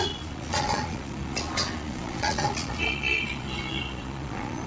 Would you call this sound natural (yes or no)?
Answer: no